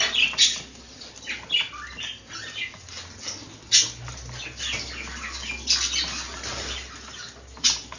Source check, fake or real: real